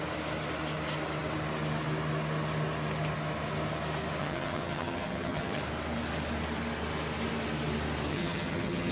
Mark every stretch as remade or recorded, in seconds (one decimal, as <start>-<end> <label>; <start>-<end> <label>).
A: 0.0-4.2 recorded; 4.2-5.6 remade; 5.6-8.1 recorded; 8.1-8.9 remade